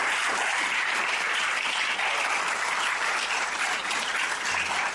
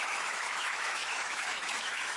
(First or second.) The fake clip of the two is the second